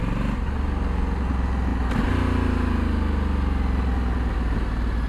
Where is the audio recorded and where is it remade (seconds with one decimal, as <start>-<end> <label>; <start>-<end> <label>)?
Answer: 0.0-5.1 recorded